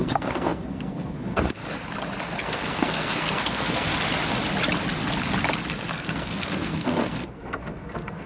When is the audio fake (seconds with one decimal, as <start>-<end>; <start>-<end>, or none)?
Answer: 0.0-1.6; 2.4-3.9; 5.7-8.3